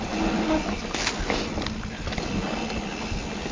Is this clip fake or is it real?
real